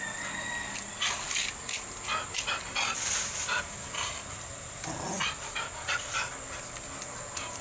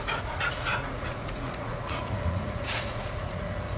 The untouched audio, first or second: first